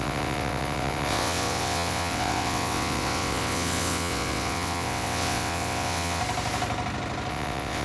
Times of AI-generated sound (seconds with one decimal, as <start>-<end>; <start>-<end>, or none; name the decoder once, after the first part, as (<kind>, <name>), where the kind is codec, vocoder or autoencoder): 0.0-6.2 (vocoder, WaveNeXt); 7.3-7.8